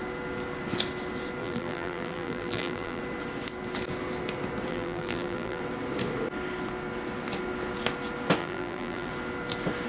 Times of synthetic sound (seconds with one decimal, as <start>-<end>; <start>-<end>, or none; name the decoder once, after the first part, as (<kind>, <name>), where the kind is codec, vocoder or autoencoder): 1.4-3.0 (vocoder, BigVGAN v2); 4.7-5.6; 8.4-9.1